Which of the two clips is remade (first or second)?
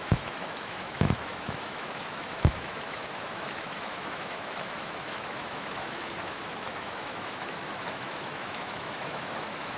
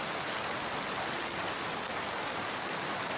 first